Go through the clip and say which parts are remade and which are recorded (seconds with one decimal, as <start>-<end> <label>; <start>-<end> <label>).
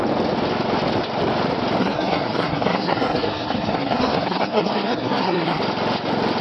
0.0-1.8 recorded; 1.8-5.6 remade; 5.6-6.4 recorded